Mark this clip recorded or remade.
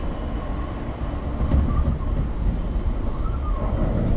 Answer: recorded